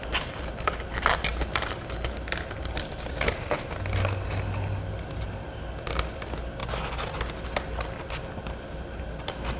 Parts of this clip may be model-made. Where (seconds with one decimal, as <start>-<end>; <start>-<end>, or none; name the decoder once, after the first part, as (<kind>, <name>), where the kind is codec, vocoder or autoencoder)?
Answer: none